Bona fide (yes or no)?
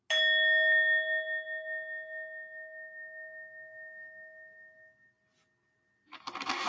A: yes